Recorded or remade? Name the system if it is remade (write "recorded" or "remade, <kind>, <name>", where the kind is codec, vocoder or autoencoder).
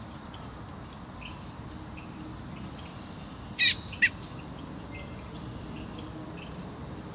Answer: recorded